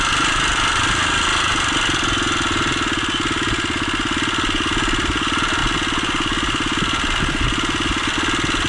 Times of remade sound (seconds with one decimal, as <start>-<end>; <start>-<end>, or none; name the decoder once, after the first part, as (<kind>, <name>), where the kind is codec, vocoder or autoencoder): none

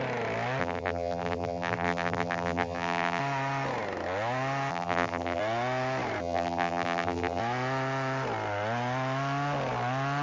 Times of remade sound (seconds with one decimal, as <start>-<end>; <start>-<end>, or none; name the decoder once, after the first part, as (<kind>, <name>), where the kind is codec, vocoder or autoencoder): 0.6-3.2 (vocoder, BigVGAN v2); 4.7-5.4; 6.2-7.4

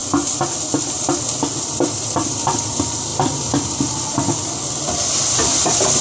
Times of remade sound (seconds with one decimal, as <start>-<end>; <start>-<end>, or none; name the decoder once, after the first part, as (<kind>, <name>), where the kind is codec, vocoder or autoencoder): 1.6-3.1 (vocoder, BigVGAN v2); 5.1-6.0

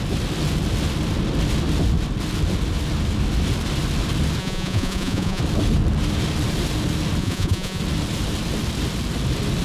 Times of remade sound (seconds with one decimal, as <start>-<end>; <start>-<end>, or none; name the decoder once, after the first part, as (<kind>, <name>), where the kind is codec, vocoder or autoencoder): 4.4-5.4 (vocoder, Vocos); 7.2-7.8

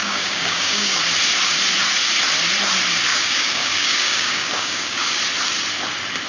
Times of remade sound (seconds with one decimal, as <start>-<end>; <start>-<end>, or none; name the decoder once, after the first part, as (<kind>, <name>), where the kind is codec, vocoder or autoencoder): 0.0-1.0 (codec, DAC); 3.1-5.2

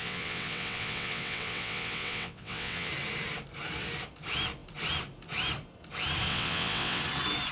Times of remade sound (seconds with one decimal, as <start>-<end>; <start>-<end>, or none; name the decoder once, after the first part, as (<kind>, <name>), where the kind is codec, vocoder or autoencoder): 0.0-2.9 (vocoder, WaveNeXt); 6.3-7.0